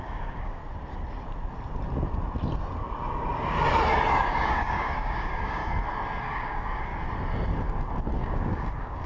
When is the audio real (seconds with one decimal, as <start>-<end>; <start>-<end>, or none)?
0.6-4.1; 5.6-6.2; 6.9-8.2